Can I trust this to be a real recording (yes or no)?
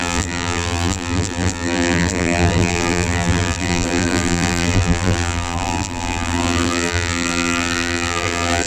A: no